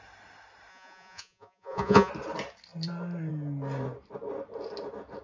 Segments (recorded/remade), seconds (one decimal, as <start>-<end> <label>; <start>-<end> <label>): 0.0-0.7 recorded; 0.7-2.1 remade; 2.1-5.2 recorded